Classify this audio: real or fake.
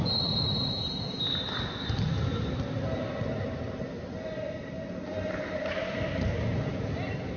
real